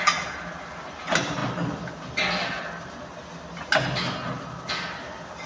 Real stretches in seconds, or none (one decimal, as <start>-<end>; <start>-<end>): 0.0-5.5